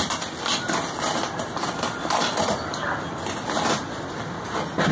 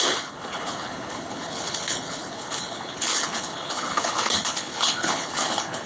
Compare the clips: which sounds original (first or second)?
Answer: first